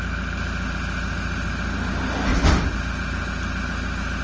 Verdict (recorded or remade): recorded